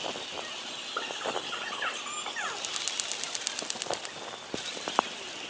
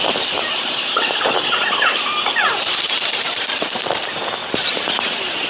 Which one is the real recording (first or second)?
first